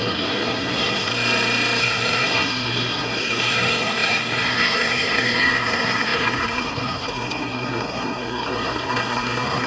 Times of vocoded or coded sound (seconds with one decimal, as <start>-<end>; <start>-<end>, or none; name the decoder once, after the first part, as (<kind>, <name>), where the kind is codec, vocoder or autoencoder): 0.0-1.1 (codec, SNAC); 1.8-9.7